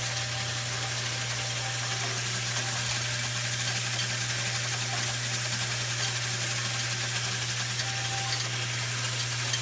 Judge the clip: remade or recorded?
recorded